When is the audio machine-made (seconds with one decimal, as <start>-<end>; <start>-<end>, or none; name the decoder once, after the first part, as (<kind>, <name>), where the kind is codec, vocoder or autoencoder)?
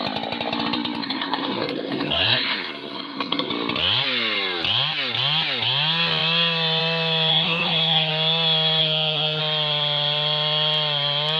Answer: 1.0-3.5 (codec, SNAC); 7.3-8.1; 8.8-9.4